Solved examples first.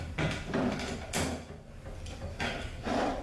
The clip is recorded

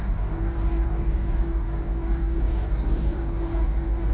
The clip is remade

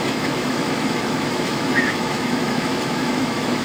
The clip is remade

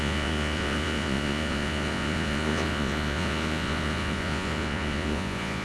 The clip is remade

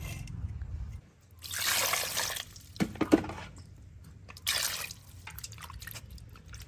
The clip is recorded